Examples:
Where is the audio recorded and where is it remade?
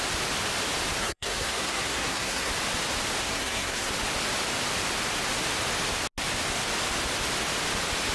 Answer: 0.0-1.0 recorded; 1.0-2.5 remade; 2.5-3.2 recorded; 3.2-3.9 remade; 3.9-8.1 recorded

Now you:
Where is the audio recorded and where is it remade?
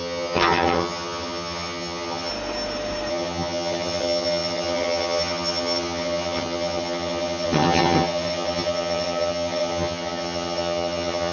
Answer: 0.0-2.3 remade; 2.3-3.1 recorded; 3.1-11.3 remade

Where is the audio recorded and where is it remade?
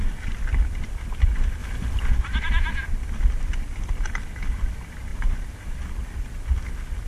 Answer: 0.0-5.1 recorded; 5.1-5.9 remade; 5.9-7.1 recorded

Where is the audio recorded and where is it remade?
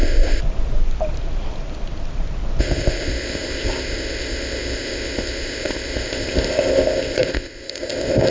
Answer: 0.0-0.4 remade; 0.4-2.6 recorded; 2.6-8.3 remade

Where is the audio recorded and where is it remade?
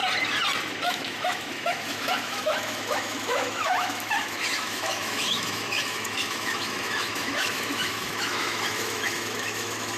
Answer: 0.0-0.9 recorded; 0.9-10.0 remade